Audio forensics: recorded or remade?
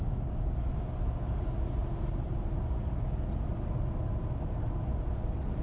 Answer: recorded